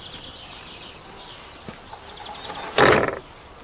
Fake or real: real